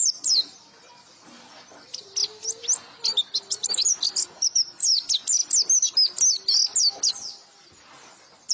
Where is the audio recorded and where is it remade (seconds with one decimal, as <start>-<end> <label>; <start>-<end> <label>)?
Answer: 0.0-2.2 remade; 2.2-3.2 recorded; 3.2-5.4 remade; 5.4-8.5 recorded